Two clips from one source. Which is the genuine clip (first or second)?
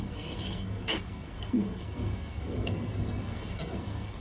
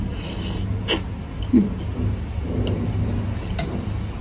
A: second